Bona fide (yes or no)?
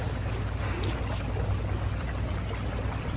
yes